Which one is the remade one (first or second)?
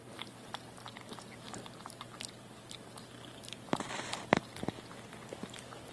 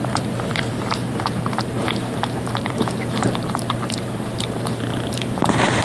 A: second